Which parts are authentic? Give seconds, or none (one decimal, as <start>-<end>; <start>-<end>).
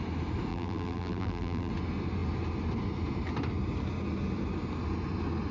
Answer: 0.0-0.5; 1.7-5.5